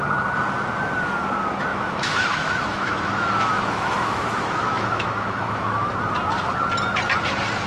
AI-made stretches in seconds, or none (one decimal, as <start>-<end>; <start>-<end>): 1.7-5.9